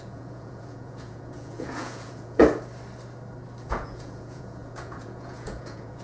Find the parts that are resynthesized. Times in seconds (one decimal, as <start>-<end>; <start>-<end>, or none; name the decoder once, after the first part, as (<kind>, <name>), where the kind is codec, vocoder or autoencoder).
0.0-2.4 (vocoder, Vocos); 3.6-6.0